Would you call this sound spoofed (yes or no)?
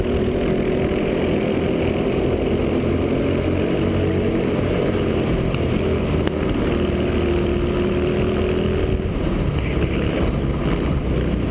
no